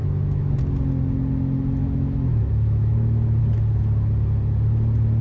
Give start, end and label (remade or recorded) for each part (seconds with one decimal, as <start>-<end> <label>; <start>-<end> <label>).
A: 0.0-0.6 remade; 0.6-1.8 recorded; 1.8-3.4 remade; 3.4-5.2 recorded